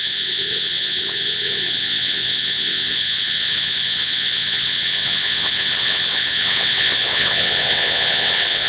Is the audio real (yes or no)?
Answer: no